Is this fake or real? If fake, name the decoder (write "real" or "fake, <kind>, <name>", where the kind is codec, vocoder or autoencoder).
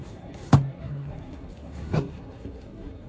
fake, codec, SNAC